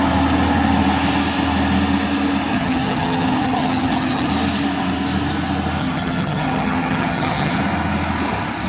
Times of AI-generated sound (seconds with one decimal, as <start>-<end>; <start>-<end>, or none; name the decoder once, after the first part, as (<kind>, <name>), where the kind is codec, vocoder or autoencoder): 2.5-4.3 (vocoder, HiFi-GAN); 5.8-7.6